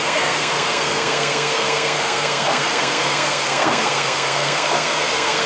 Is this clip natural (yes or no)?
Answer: no